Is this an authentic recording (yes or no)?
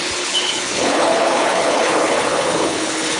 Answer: no